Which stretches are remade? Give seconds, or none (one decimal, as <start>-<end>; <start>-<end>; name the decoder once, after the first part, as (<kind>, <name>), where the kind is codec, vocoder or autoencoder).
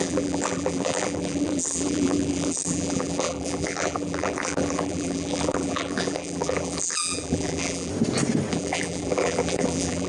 0.0-7.9 (vocoder, BigVGAN v2); 8.5-10.1